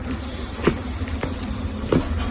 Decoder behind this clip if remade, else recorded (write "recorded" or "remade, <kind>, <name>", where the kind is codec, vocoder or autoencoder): recorded